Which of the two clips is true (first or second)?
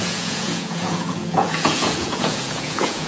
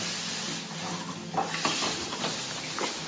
second